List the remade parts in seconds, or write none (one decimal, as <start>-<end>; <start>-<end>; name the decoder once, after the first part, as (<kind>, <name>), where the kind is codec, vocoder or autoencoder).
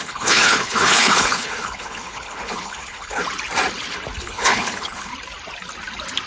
0.0-3.2 (codec, HILCodec); 4.2-5.1